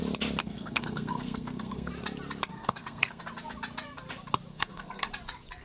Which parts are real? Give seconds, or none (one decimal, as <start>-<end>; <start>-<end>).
0.0-0.4; 1.9-2.5; 3.2-4.5; 5.1-5.6